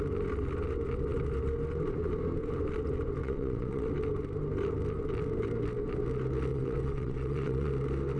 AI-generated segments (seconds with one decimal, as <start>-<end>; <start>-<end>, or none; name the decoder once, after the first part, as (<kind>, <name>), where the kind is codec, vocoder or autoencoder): 3.2-3.9 (vocoder, WaveNeXt); 6.5-7.7